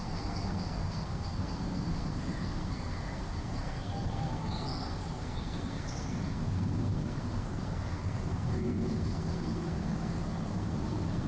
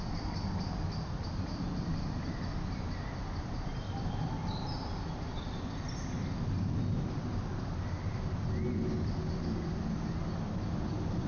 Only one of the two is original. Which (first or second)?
second